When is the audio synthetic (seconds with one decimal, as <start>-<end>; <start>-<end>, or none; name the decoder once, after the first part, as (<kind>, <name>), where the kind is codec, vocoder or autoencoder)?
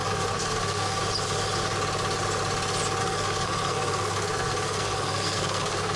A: 0.0-1.0 (codec, SNAC); 3.0-6.0